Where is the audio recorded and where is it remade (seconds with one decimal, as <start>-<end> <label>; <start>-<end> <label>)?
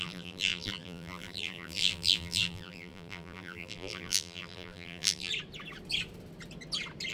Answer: 0.0-5.3 remade; 5.3-7.1 recorded